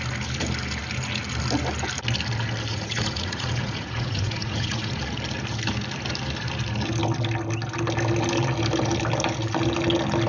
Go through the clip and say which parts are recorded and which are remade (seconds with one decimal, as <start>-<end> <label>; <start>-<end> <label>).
0.0-2.7 recorded; 2.7-5.0 remade; 5.0-10.3 recorded